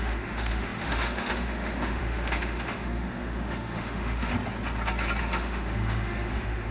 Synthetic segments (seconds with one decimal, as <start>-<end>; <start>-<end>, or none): 0.0-4.3; 5.2-6.7